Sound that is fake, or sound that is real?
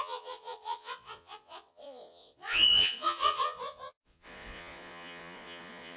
fake